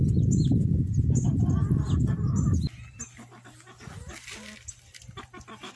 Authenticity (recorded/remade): recorded